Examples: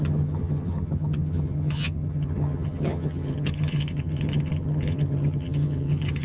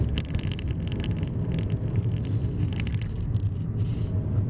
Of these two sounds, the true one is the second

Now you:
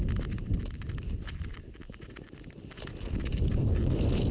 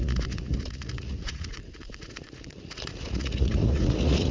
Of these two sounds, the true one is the first